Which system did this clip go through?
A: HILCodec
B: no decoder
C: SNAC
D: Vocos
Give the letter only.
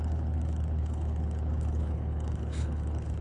A